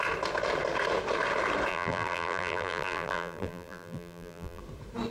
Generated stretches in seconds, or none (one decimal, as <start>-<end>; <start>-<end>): 1.7-4.6